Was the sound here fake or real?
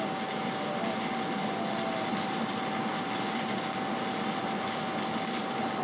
real